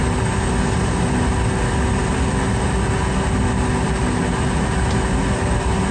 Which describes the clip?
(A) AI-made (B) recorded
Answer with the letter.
B